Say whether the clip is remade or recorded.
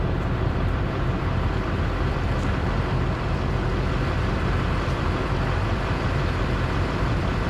remade